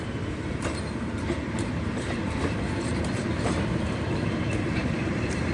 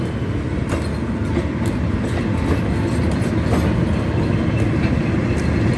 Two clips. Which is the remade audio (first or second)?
first